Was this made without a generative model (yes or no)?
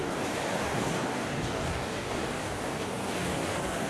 no